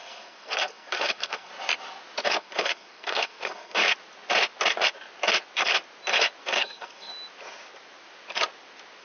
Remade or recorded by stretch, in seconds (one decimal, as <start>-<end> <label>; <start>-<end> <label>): 0.0-1.5 remade; 1.5-2.3 recorded; 2.3-3.8 remade; 3.8-6.4 recorded; 6.4-7.1 remade; 7.1-9.0 recorded